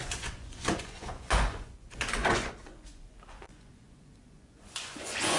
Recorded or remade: remade